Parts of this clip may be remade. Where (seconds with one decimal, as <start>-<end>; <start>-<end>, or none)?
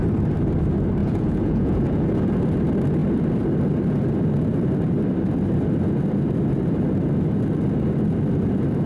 1.0-2.3